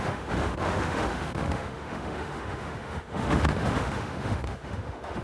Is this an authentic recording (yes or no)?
no